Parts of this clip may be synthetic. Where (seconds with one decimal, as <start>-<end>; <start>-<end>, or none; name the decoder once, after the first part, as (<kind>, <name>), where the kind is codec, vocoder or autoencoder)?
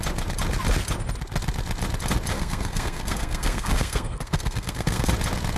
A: 2.3-5.1 (codec, SNAC)